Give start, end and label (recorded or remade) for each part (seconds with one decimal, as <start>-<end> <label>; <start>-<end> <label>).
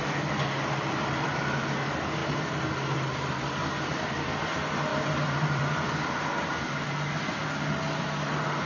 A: 0.0-3.9 recorded; 3.9-4.4 remade; 4.4-4.9 recorded; 4.9-6.9 remade; 6.9-8.7 recorded